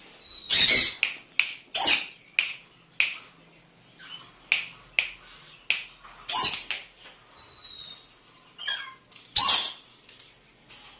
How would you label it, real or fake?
real